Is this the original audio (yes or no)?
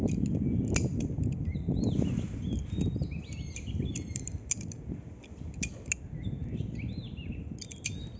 yes